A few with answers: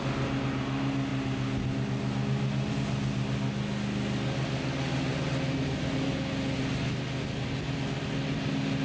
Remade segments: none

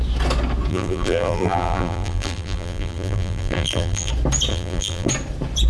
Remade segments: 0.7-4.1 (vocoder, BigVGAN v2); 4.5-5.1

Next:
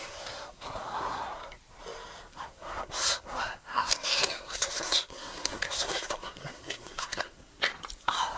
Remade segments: 0.0-1.4 (codec, SNAC); 2.3-7.5; 8.0-8.4